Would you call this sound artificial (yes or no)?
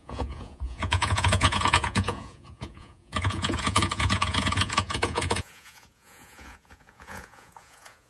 yes